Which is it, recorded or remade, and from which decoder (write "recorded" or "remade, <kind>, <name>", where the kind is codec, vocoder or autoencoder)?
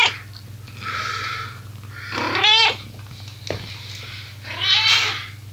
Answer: recorded